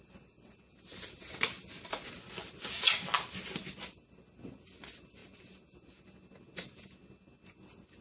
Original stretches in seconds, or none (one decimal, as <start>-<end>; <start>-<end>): 0.0-8.0